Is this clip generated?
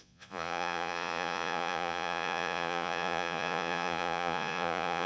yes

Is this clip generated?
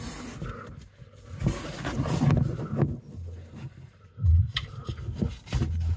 no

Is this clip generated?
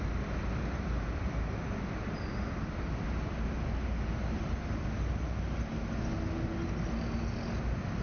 no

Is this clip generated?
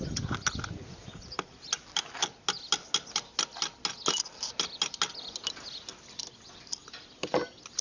no